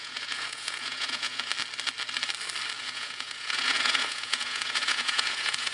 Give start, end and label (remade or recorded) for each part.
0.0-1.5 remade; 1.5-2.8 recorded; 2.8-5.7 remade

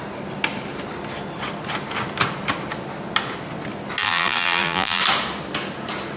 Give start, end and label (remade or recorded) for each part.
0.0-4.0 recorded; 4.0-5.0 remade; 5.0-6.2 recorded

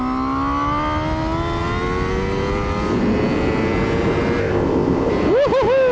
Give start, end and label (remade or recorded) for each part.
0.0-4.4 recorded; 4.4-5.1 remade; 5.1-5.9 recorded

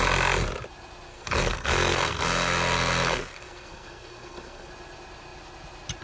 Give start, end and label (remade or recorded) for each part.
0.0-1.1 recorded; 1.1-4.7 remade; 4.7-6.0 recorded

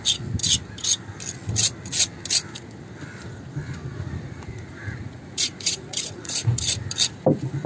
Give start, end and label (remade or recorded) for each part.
0.0-3.8 recorded; 3.8-6.6 remade; 6.6-7.7 recorded